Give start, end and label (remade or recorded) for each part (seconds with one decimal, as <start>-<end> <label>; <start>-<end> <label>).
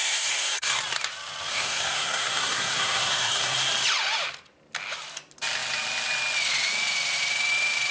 0.0-0.8 remade; 0.8-1.5 recorded; 1.5-3.7 remade; 3.7-7.9 recorded